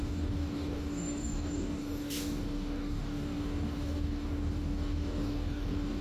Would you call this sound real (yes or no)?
no